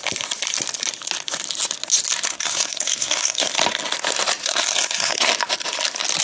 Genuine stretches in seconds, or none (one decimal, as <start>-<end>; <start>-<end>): 0.0-2.3; 3.5-4.4; 5.3-6.2